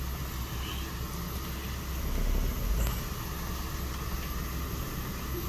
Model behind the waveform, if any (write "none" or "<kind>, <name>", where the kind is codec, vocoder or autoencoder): none